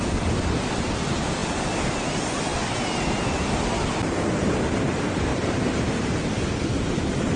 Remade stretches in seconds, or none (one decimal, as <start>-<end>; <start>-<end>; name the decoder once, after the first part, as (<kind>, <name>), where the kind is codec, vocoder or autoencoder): 5.3-5.9 (vocoder, BigVGAN v2)